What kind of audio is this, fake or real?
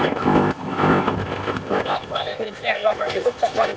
fake